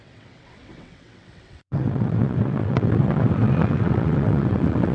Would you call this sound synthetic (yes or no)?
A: yes